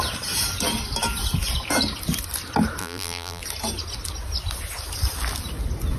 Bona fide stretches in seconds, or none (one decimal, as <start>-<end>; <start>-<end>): 0.0-2.8; 3.4-6.0